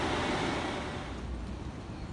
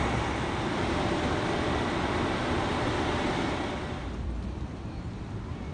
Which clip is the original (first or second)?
first